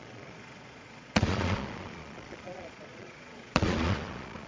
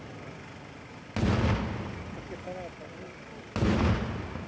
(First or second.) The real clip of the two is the second